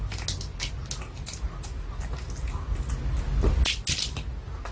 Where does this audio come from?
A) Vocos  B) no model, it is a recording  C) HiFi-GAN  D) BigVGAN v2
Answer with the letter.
B